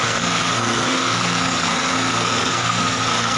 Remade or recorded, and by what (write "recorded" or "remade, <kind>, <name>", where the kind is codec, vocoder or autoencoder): remade, codec, SNAC